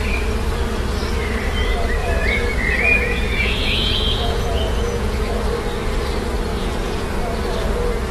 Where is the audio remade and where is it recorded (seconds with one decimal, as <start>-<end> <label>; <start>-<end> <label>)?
0.0-2.0 recorded; 2.0-2.5 remade; 2.5-2.9 recorded; 2.9-5.3 remade; 5.3-6.5 recorded; 6.5-7.1 remade; 7.1-8.1 recorded